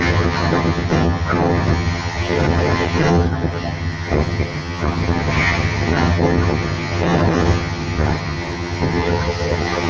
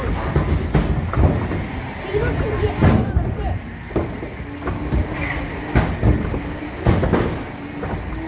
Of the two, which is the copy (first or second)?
first